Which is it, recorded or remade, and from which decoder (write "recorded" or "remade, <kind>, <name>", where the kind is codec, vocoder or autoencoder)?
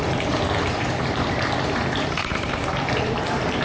remade, vocoder, BigVGAN v2